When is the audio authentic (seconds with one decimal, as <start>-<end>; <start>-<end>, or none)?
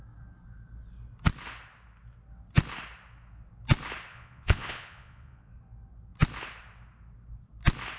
0.0-4.1; 5.5-8.0